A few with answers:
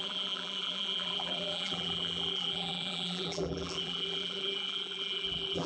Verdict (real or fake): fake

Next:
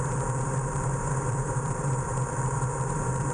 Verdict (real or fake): fake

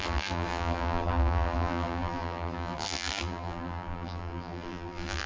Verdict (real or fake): fake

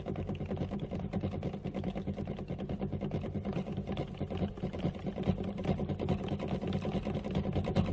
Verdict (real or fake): real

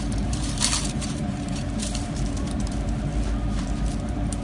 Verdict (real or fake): fake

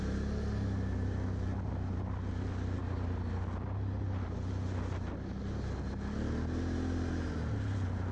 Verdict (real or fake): real